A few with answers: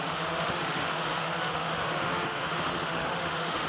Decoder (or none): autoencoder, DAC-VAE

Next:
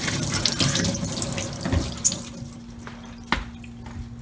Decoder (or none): none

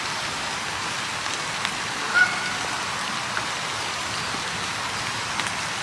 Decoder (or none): none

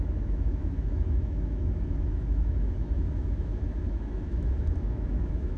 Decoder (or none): autoencoder, DAC-VAE